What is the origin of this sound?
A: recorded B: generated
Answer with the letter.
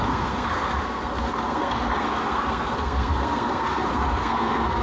B